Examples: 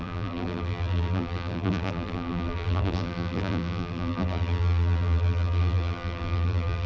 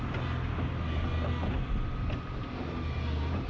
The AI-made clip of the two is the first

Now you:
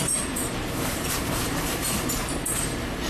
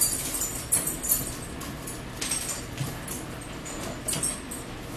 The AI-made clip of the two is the first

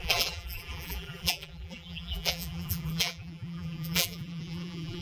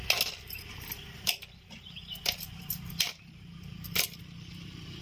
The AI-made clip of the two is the first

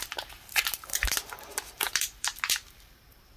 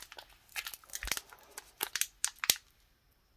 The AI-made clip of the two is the first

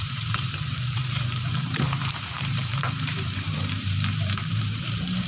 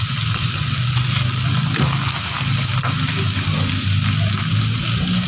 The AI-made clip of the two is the first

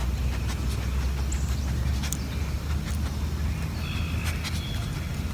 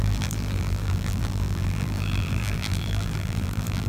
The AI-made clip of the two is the second